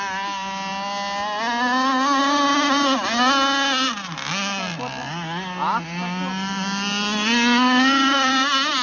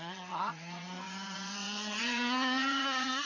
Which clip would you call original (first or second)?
first